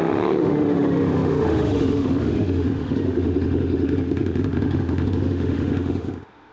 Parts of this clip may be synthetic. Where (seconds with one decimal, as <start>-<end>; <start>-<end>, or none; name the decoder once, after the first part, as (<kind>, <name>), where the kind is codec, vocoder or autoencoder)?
0.0-6.5 (autoencoder, DAC-VAE)